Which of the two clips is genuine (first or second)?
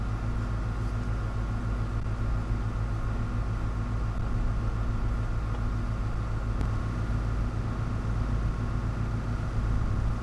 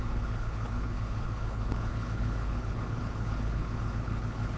first